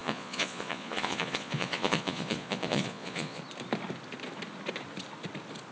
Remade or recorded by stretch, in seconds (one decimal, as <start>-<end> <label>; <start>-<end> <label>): 0.0-3.4 remade; 3.4-5.7 recorded